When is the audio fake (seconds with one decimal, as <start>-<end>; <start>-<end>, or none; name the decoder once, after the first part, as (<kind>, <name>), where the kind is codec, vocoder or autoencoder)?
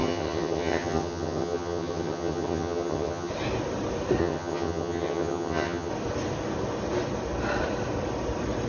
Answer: 0.0-3.3 (vocoder, HiFi-GAN); 4.2-5.9